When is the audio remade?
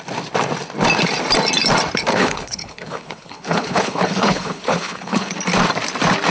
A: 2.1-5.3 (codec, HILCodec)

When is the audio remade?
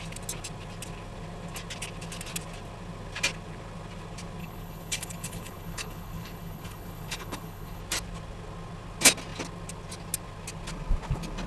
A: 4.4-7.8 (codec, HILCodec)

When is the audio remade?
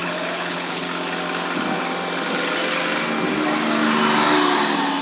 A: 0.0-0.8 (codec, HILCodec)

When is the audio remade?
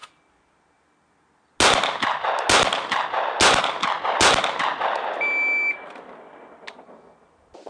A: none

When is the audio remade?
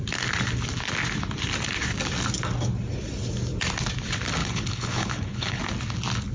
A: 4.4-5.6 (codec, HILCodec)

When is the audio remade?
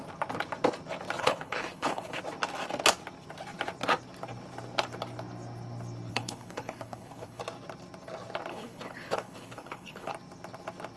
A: 1.2-2.2 (codec, HILCodec); 6.1-7.4; 8.5-10.1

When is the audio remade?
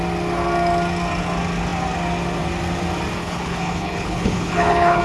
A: 3.2-5.0 (codec, HILCodec)